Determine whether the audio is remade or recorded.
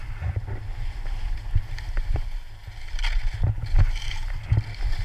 recorded